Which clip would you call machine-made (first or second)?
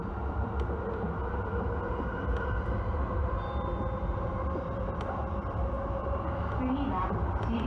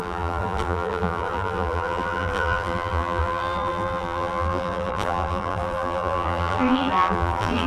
second